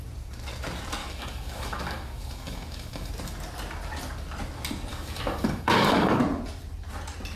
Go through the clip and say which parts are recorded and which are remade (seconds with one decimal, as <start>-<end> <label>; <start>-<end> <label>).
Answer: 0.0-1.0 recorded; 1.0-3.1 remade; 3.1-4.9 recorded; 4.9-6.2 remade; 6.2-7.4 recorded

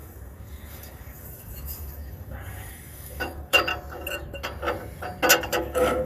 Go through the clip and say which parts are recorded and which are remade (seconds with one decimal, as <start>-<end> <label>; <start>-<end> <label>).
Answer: 0.0-3.7 remade; 3.7-5.6 recorded; 5.6-6.1 remade

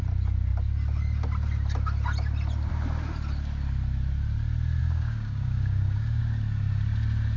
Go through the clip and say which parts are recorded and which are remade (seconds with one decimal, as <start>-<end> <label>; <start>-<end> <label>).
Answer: 0.0-4.8 recorded; 4.8-6.2 remade; 6.2-7.4 recorded

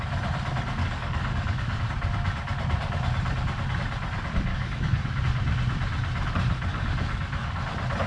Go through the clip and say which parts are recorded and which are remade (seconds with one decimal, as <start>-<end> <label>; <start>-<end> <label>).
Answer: 0.0-0.8 recorded; 0.8-1.8 remade; 1.8-4.5 recorded; 4.5-5.2 remade; 5.2-6.7 recorded; 6.7-7.6 remade; 7.6-8.1 recorded

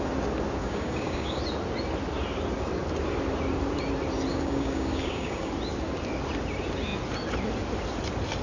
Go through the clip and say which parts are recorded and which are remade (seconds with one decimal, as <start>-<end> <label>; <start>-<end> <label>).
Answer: 0.0-0.6 recorded; 0.6-1.4 remade; 1.4-4.3 recorded; 4.3-5.5 remade; 5.5-8.4 recorded